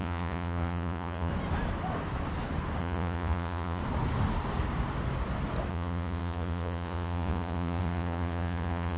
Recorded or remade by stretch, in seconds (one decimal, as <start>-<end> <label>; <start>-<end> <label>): 0.0-1.3 remade; 1.3-2.8 recorded; 2.8-3.8 remade; 3.8-5.7 recorded; 5.7-9.0 remade